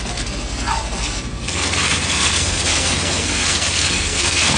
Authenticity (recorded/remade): remade